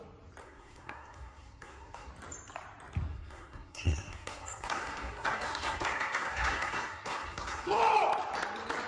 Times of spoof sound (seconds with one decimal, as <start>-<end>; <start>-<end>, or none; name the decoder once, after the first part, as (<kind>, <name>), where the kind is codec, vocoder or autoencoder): 0.4-2.1 (codec, SNAC); 3.1-7.8